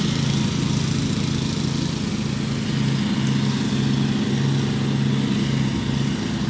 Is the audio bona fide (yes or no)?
yes